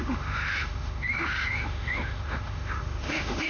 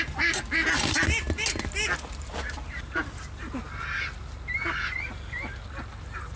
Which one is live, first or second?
second